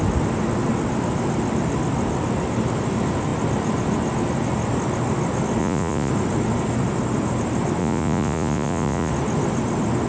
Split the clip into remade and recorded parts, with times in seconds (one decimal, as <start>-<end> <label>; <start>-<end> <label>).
0.0-5.6 recorded; 5.6-6.1 remade; 6.1-7.8 recorded; 7.8-9.1 remade; 9.1-10.1 recorded